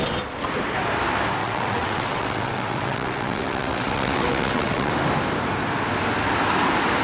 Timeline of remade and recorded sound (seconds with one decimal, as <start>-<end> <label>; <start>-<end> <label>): 0.0-1.4 recorded; 1.4-4.9 remade; 4.9-7.0 recorded